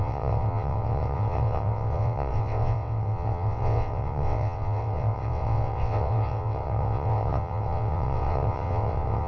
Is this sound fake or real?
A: fake